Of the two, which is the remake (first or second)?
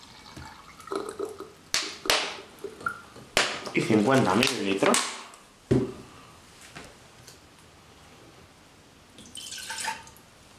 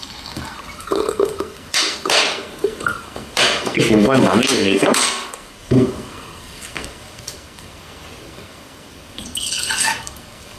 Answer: second